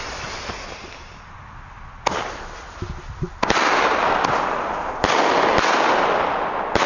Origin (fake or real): real